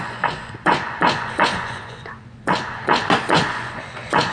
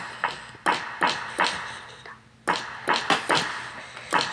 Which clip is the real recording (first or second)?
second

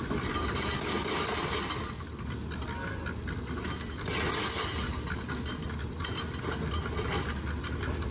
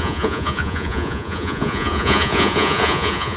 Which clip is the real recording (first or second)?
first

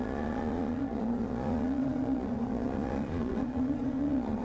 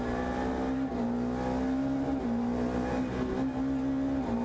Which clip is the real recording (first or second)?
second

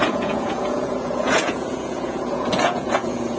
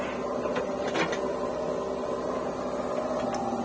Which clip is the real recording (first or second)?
second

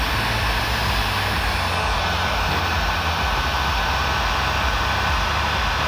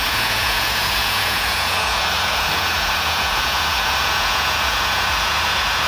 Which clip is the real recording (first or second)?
first